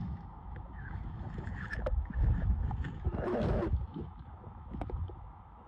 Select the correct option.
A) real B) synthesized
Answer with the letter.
B